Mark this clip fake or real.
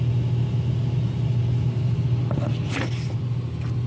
real